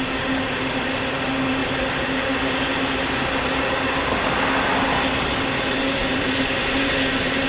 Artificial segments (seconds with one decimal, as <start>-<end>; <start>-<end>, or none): 6.0-6.9